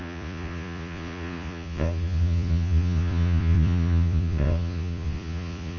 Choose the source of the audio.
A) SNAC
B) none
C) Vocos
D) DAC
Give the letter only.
C